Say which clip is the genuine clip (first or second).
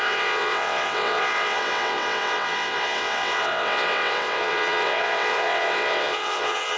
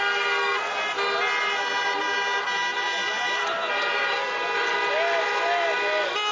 second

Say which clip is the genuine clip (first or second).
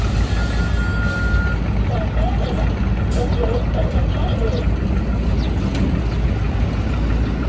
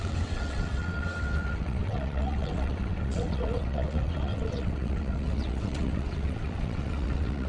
first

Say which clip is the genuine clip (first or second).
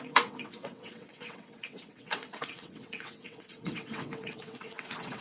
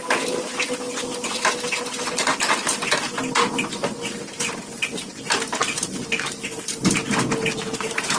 second